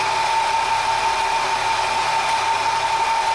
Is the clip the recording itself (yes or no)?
yes